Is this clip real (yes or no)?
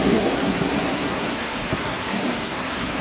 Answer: no